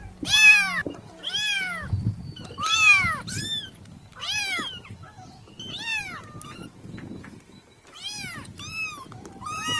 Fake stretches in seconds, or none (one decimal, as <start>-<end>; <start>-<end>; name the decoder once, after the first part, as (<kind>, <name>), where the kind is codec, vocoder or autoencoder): none